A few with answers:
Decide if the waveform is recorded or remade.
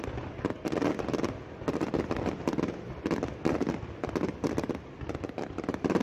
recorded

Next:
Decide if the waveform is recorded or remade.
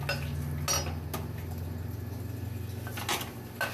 recorded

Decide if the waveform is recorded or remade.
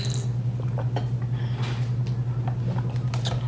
recorded